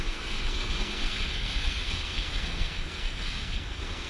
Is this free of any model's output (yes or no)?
no